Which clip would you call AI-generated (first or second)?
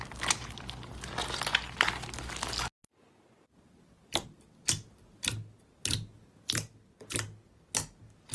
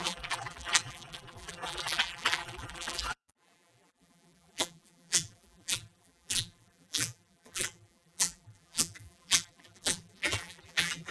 second